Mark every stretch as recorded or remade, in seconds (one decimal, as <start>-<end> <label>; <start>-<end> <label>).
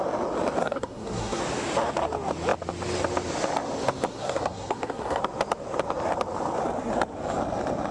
0.0-0.6 recorded; 0.6-1.4 remade; 1.4-4.1 recorded; 4.1-5.2 remade; 5.2-7.9 recorded